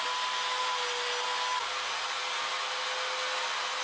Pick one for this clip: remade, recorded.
recorded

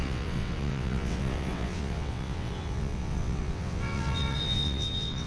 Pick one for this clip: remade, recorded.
remade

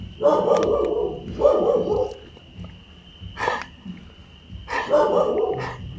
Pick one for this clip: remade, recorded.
recorded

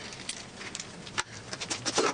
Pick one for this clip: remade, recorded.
recorded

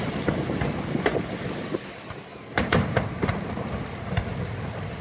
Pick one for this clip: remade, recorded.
recorded